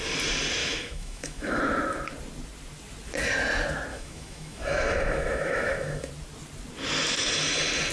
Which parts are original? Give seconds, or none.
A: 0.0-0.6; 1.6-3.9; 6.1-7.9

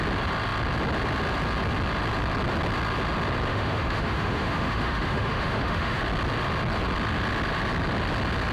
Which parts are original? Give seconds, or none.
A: 0.0-3.5; 6.0-8.5

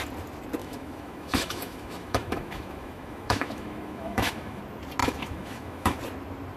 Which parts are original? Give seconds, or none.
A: 0.0-0.6; 4.6-5.0; 6.0-6.6

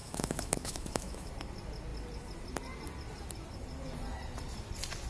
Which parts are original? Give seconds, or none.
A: 1.3-5.1